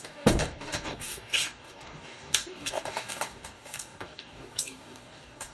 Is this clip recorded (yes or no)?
no